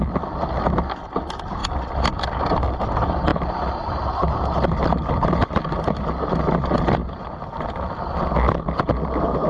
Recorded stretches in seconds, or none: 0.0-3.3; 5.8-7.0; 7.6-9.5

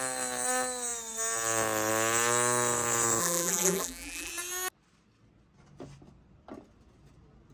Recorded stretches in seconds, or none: 0.0-3.2; 4.3-7.5

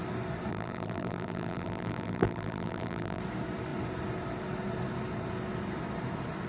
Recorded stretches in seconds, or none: 0.0-0.5; 3.2-6.5